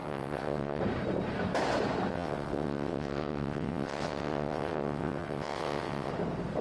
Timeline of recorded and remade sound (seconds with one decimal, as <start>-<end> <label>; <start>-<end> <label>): 0.0-0.8 remade; 0.8-2.1 recorded; 2.1-6.1 remade; 6.1-6.6 recorded